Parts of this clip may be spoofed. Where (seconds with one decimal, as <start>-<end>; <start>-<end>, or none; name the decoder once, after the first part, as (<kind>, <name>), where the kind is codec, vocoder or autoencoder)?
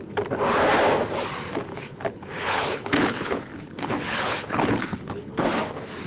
1.7-5.4 (codec, HILCodec)